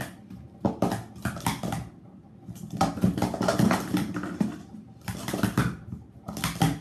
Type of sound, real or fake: real